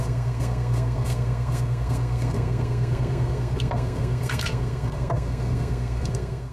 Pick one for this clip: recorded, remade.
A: remade